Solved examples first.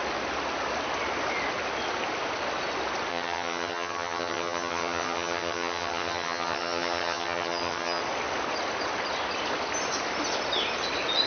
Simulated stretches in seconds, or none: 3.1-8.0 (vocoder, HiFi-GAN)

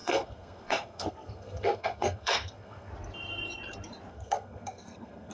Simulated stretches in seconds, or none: 0.0-2.9 (codec, SNAC); 4.1-5.3

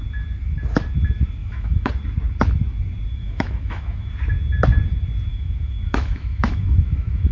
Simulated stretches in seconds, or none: 1.4-1.9 (autoencoder, DAC-VAE); 3.1-4.1; 5.3-7.3

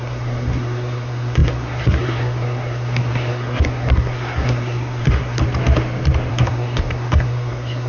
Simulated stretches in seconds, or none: 0.0-5.4 (codec, SNAC); 6.3-7.9

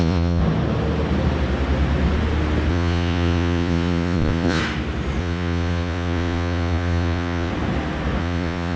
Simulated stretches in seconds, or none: 0.0-0.4 (vocoder, Vocos); 2.7-4.6; 5.2-7.5; 8.2-8.8

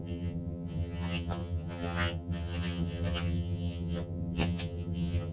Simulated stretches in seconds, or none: 0.0-5.3 (vocoder, HiFi-GAN)

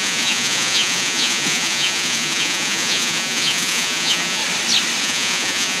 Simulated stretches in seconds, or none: 0.0-4.4 (vocoder, Vocos); 5.0-5.8